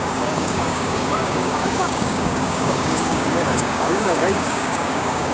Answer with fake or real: fake